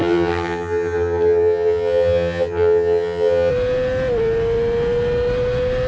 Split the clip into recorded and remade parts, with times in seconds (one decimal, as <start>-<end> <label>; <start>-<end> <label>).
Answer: 0.0-3.5 remade; 3.5-5.9 recorded

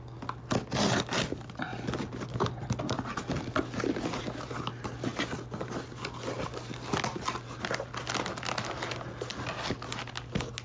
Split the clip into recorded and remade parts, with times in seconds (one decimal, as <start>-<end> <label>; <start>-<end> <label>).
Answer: 0.0-10.6 recorded

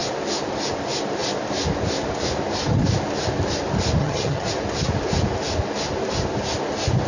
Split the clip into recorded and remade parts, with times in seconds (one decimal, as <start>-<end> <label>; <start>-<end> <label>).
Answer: 0.0-4.0 recorded; 4.0-4.5 remade; 4.5-7.1 recorded

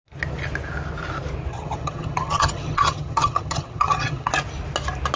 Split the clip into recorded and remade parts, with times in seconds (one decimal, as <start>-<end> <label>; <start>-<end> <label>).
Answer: 0.0-1.5 recorded; 1.5-4.3 remade; 4.3-5.2 recorded

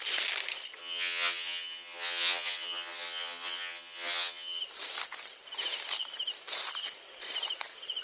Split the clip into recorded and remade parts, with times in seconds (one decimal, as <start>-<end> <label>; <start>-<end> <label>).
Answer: 0.0-0.8 recorded; 0.8-4.6 remade; 4.6-8.0 recorded

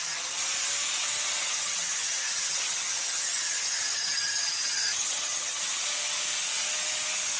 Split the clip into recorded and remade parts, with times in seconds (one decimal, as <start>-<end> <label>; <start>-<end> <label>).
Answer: 0.0-1.4 recorded; 1.4-5.8 remade; 5.8-7.4 recorded